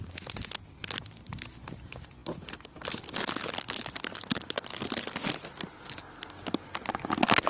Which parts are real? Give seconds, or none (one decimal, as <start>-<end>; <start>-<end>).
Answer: 0.0-7.5